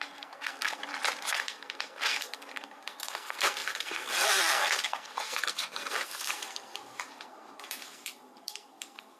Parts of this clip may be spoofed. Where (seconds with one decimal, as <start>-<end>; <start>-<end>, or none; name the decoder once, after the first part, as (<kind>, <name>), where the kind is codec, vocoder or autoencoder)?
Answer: 0.0-0.8 (codec, SNAC); 1.3-9.2